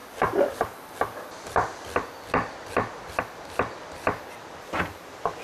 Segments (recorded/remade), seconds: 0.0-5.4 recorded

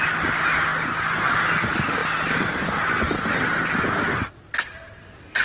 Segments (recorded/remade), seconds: 0.0-5.4 recorded

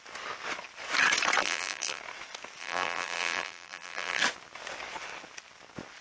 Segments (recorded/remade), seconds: 0.0-1.4 recorded; 1.4-2.0 remade; 2.0-2.6 recorded; 2.6-4.2 remade; 4.2-6.0 recorded

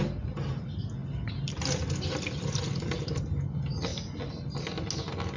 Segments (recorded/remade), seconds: 0.0-5.4 recorded

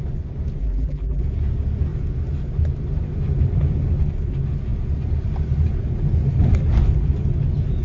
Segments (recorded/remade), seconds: 0.0-0.6 recorded; 0.6-1.2 remade; 1.2-7.8 recorded